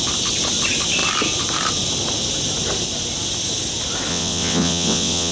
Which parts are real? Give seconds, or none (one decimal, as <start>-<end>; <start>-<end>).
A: 0.0-4.1

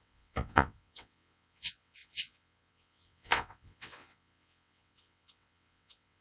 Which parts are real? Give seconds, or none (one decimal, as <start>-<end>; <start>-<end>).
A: none

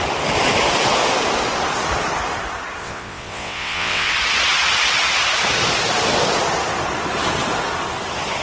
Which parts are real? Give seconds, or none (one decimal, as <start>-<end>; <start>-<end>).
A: 0.0-2.8; 4.1-8.4

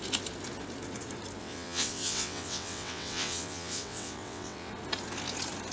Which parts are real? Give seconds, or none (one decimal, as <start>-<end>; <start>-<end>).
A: 0.0-1.4; 4.7-5.7